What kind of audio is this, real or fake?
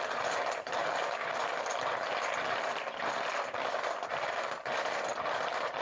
real